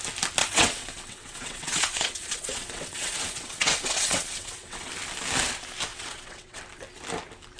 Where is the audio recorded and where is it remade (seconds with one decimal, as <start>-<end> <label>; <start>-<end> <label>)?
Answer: 0.0-0.4 recorded; 0.4-4.9 remade; 4.9-5.9 recorded; 5.9-6.6 remade; 6.6-7.6 recorded